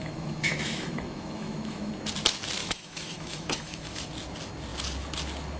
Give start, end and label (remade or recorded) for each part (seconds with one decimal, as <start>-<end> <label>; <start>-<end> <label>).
0.0-1.9 remade; 1.9-2.6 recorded; 2.6-4.1 remade; 4.1-5.6 recorded